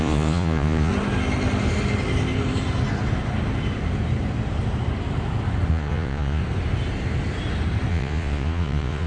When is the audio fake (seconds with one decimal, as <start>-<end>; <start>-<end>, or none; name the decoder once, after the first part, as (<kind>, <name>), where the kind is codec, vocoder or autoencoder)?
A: 0.0-0.9 (vocoder, Vocos); 5.7-6.4; 7.9-9.1